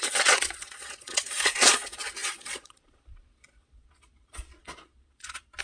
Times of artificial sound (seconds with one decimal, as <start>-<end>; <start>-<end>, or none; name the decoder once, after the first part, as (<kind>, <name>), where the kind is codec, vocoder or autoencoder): 0.0-5.6 (vocoder, Vocos)

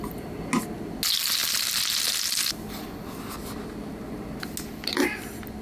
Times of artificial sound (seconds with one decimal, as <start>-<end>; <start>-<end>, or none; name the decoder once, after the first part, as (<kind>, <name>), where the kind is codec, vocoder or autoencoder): none

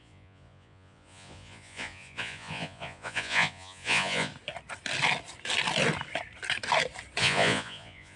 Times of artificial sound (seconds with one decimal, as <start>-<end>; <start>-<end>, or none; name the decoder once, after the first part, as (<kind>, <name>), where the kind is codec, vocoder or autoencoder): 0.0-4.3 (vocoder, Vocos); 7.2-8.2

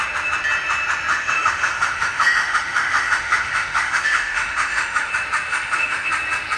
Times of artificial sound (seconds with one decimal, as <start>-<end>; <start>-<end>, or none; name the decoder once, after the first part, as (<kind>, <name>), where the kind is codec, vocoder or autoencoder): 1.1-5.1 (autoencoder, DAC-VAE); 5.5-6.1

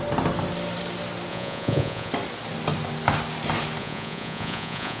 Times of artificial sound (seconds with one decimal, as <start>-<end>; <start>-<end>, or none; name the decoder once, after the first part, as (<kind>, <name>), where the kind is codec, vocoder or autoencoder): 1.3-2.1 (vocoder, Vocos); 3.8-5.0

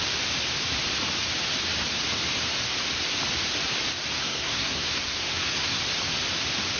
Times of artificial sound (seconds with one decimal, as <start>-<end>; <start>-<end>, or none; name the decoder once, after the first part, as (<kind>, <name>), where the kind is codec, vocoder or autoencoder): 4.2-5.8 (codec, SNAC)